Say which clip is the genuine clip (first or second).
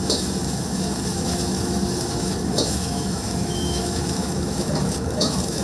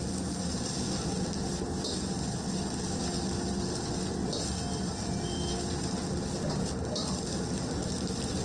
second